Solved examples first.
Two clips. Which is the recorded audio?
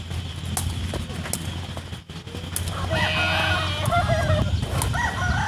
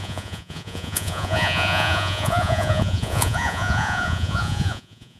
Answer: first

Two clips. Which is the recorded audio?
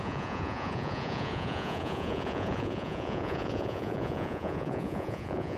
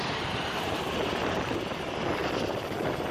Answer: second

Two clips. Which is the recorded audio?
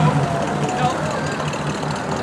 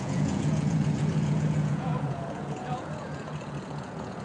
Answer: first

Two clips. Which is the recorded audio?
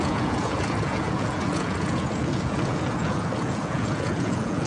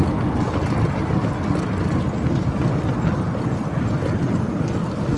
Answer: second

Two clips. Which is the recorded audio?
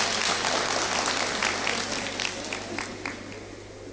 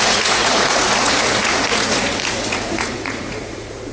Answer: first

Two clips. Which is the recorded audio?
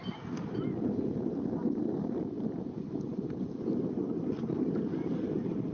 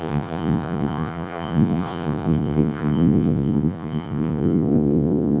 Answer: first